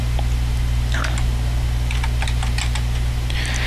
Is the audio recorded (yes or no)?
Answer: yes